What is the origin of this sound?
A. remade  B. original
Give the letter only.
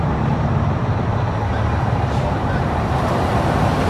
A